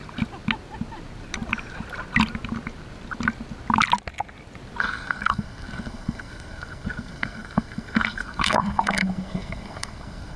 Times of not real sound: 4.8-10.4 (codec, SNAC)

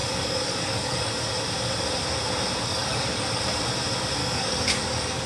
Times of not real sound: 0.0-1.2 (codec, DAC); 2.7-3.4; 4.2-5.3

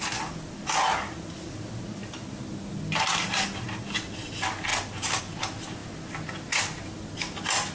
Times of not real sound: none

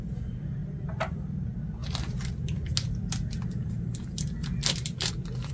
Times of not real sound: none

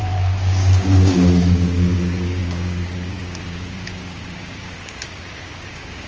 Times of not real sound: 0.0-6.1 (codec, DAC)

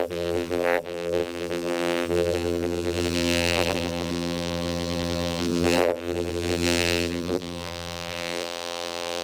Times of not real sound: 0.0-9.2 (vocoder, BigVGAN v2)